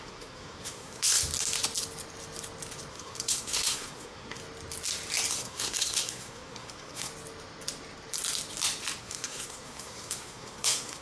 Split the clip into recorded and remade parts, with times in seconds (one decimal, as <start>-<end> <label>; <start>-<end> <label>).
0.0-1.2 remade; 1.2-2.9 recorded; 2.9-4.4 remade; 4.4-5.3 recorded; 5.3-7.1 remade; 7.1-9.0 recorded; 9.0-11.0 remade